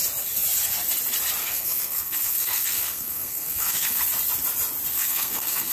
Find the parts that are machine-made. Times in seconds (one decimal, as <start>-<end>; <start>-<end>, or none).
1.4-4.0; 4.9-5.7